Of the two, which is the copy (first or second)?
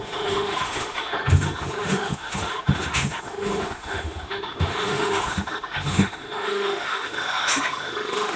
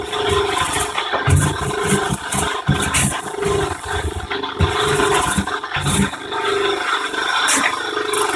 first